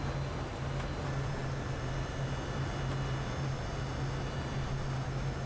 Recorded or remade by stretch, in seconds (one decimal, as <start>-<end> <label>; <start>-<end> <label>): 0.0-5.5 recorded